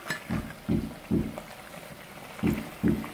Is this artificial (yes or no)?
no